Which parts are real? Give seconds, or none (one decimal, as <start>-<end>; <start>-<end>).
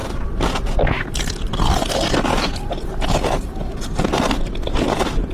0.0-5.3